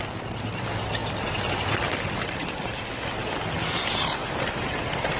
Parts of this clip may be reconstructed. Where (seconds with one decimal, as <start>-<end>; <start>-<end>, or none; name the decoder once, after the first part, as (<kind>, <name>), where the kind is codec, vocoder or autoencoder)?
none